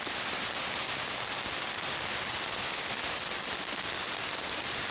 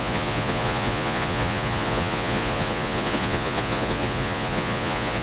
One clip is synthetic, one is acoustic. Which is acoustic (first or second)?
first